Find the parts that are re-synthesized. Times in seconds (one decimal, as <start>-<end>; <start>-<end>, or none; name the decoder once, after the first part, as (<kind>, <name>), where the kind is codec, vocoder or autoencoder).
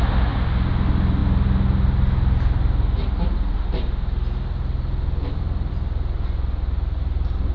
none